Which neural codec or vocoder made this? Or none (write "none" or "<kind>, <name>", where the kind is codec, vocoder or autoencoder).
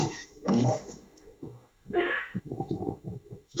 autoencoder, DAC-VAE